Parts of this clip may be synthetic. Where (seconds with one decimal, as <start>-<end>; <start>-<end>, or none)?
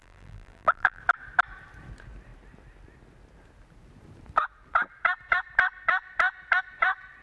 0.0-1.0